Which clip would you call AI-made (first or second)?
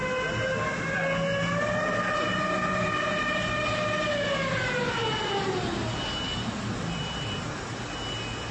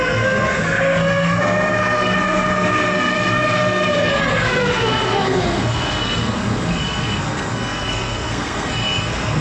second